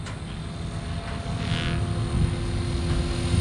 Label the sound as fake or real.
real